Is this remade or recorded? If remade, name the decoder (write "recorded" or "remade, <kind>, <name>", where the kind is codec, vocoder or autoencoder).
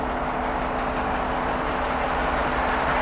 recorded